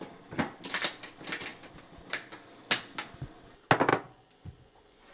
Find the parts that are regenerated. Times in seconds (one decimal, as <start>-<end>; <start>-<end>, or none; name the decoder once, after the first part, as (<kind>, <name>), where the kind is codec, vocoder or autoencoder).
3.9-5.1 (vocoder, Vocos)